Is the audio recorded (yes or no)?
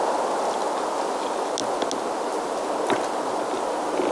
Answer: yes